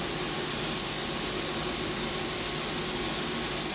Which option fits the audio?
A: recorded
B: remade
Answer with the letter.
A